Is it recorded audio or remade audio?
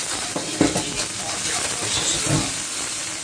recorded